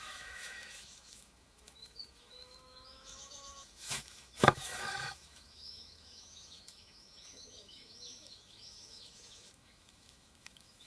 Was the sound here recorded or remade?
remade